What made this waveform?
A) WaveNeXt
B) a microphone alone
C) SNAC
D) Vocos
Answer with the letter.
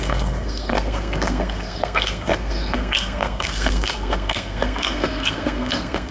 C